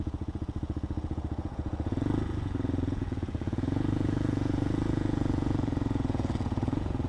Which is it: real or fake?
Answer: fake